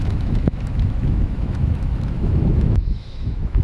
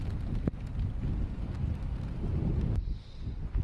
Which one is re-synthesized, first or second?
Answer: first